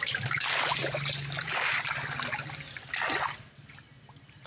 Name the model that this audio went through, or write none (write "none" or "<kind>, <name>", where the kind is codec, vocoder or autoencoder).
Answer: none